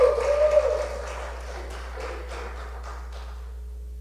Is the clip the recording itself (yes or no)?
yes